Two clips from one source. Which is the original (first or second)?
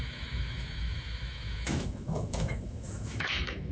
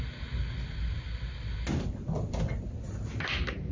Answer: second